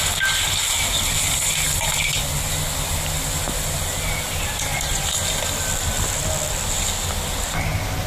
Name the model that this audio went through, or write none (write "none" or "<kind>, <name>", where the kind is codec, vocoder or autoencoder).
none